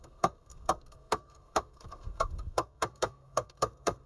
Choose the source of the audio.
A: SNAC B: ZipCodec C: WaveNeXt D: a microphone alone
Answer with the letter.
A